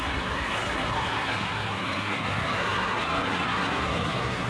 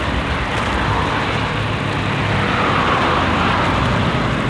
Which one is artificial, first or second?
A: first